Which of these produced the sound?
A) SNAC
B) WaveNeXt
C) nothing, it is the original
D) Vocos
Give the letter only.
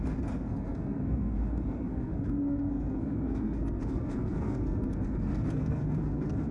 A